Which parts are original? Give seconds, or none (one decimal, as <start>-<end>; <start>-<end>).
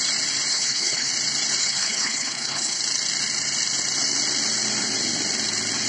0.0-0.5; 1.1-1.6; 2.8-5.9